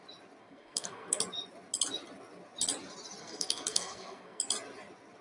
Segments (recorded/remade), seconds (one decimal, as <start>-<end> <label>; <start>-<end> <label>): 0.0-0.4 recorded; 0.4-1.2 remade; 1.2-3.2 recorded; 3.2-4.4 remade; 4.4-5.2 recorded